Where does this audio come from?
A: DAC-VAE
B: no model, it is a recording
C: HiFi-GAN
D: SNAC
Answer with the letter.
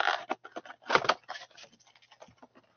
B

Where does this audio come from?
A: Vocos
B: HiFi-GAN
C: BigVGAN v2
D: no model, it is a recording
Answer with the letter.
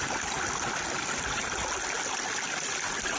D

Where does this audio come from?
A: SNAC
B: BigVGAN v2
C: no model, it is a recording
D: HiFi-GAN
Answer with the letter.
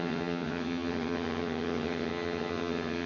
D